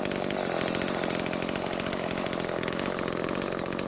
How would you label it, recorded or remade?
recorded